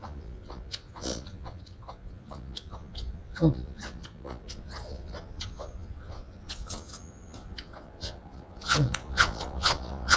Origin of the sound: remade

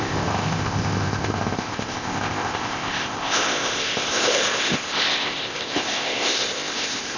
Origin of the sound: remade